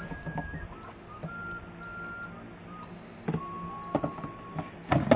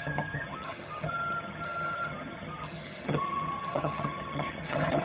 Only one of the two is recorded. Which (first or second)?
first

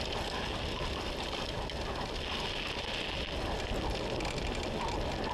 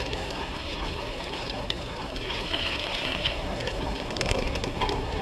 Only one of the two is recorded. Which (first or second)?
first